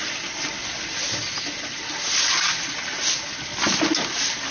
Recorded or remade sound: recorded